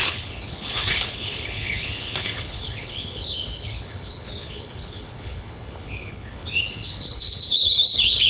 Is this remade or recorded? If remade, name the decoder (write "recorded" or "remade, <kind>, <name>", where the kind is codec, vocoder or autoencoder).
remade, codec, HILCodec